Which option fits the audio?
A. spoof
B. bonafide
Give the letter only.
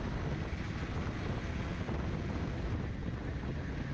B